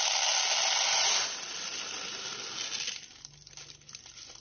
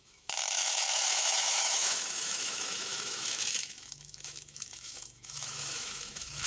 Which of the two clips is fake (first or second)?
second